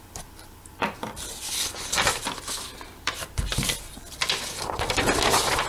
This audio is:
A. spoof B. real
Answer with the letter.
A